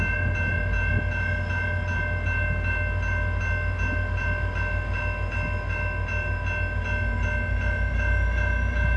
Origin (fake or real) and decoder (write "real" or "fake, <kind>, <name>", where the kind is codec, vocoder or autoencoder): real